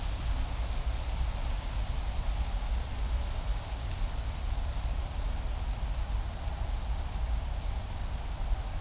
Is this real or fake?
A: real